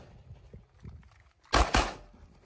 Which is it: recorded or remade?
recorded